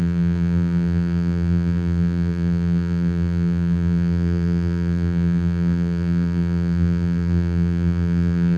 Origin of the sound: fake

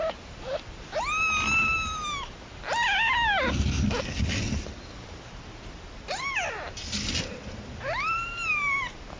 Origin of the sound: real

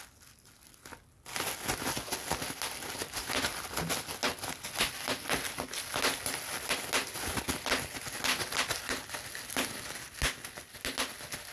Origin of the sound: real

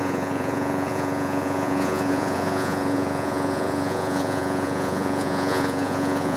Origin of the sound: fake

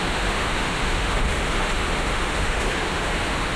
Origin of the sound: fake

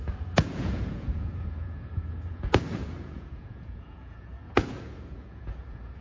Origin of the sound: fake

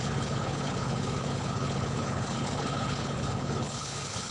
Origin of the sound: fake